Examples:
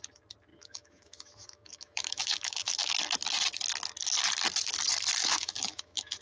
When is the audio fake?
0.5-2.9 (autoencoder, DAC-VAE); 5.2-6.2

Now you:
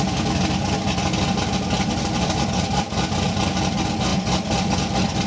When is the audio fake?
none

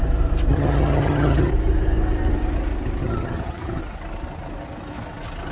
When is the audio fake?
0.5-1.5 (vocoder, HiFi-GAN); 3.0-3.8